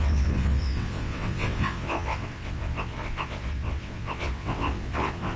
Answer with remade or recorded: remade